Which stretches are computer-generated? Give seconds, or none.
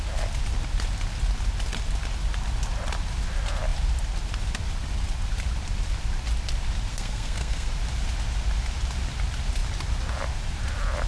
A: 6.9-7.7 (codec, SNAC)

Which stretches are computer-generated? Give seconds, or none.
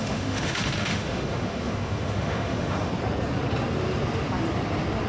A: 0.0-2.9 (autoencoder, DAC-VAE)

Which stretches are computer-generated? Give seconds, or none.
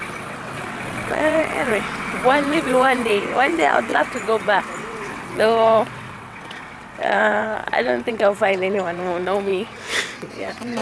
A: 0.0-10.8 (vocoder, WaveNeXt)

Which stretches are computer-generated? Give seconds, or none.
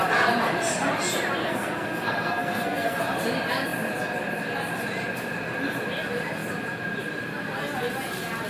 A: 1.4-3.0 (codec, SNAC)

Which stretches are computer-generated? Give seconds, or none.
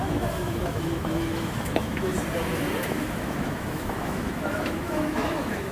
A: 0.0-2.1 (autoencoder, DAC-VAE); 2.8-5.7